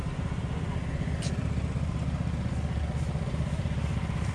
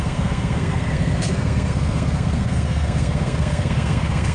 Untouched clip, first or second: first